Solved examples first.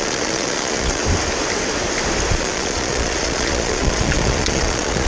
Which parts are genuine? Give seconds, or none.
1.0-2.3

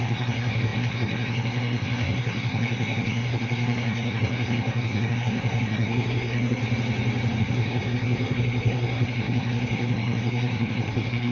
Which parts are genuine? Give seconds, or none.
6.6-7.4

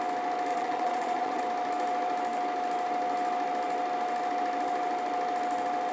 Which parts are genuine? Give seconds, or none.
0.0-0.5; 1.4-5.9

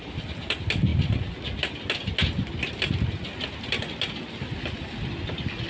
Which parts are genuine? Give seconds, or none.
0.0-5.7